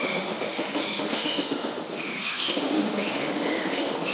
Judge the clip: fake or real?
fake